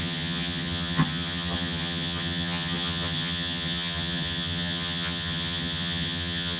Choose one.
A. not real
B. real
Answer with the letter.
A